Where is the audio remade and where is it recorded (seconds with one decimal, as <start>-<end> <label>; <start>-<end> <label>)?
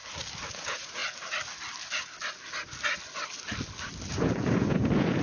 0.0-0.5 recorded; 0.5-1.0 remade; 1.0-4.1 recorded; 4.1-5.2 remade